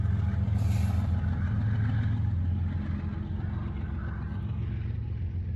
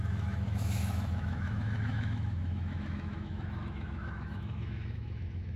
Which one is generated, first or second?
second